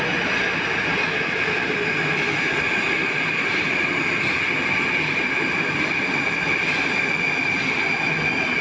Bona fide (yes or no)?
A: yes